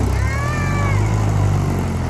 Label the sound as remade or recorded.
recorded